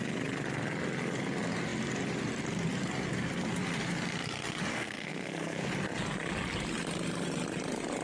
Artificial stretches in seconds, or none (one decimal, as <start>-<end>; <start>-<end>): 4.7-5.7